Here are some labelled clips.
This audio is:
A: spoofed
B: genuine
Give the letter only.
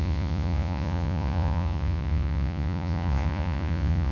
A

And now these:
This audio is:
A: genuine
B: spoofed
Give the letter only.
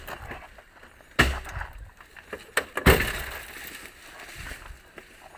A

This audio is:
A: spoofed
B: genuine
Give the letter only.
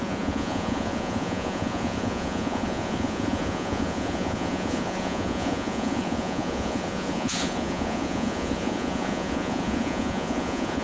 A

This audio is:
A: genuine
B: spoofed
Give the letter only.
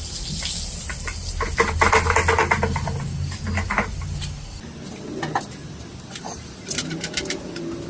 A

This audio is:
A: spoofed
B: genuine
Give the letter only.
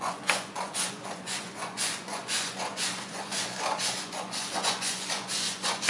A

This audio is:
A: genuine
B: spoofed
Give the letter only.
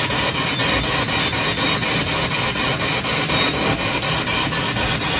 A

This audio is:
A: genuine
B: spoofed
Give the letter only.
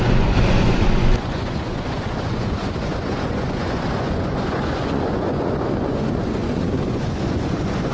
B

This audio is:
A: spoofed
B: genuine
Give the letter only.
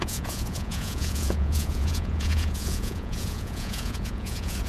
A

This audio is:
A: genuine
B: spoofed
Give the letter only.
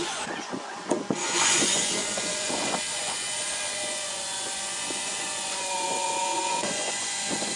B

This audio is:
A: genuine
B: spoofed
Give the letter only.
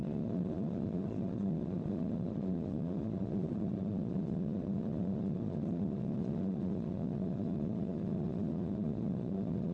B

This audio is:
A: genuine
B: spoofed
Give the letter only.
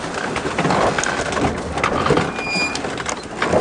A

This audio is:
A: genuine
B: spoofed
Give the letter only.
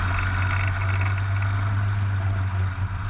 A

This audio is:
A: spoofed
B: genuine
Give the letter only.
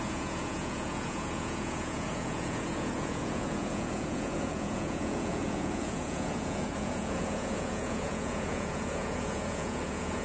A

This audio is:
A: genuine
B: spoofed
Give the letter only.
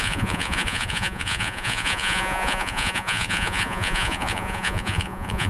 B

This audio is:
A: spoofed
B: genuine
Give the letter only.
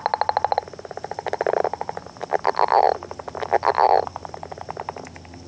B